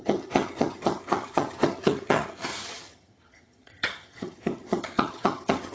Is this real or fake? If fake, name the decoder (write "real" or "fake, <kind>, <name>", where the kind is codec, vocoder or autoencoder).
fake, vocoder, HiFi-GAN